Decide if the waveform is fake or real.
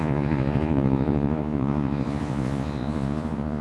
fake